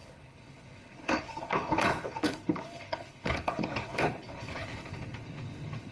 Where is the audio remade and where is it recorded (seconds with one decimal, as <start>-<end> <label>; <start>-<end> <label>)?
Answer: 0.0-5.9 remade